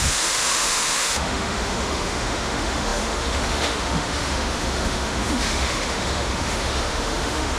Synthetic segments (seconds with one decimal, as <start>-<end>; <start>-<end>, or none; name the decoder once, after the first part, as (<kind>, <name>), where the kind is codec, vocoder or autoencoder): 0.0-7.6 (autoencoder, DAC-VAE)